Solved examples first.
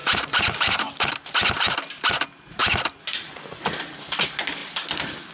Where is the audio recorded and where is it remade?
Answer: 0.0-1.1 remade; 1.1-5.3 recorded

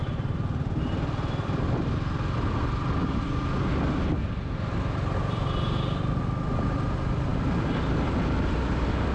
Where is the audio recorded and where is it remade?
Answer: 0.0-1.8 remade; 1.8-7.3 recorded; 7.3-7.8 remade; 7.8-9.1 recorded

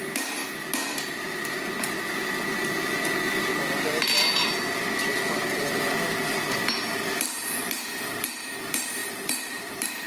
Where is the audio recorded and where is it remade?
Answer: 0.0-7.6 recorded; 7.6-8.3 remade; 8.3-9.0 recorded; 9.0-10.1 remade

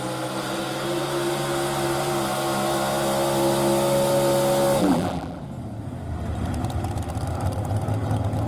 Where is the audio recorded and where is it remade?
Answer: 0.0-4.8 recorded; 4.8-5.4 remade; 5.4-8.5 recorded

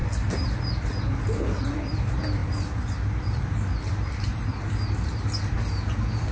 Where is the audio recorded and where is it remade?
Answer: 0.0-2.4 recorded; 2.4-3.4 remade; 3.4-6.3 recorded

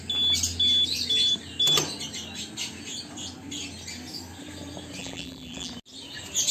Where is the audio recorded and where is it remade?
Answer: 0.0-5.0 recorded; 5.0-5.7 remade; 5.7-6.5 recorded